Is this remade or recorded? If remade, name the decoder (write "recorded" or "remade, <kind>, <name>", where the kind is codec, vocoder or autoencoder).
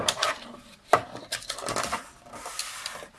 recorded